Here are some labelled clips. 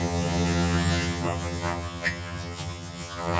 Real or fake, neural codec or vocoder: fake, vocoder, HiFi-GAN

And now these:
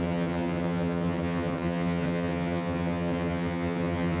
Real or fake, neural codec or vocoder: fake, vocoder, HiFi-GAN